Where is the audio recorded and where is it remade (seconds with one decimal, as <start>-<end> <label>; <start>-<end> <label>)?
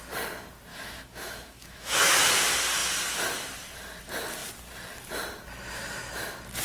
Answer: 0.0-0.7 recorded; 0.7-2.3 remade; 2.3-6.6 recorded